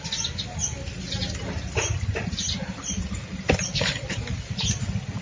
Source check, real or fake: real